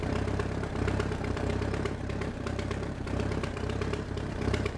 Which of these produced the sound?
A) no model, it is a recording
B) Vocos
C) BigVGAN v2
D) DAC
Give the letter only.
C